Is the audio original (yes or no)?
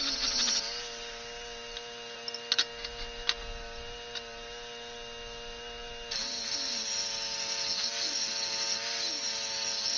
yes